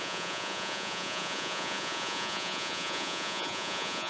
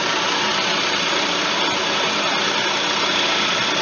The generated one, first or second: first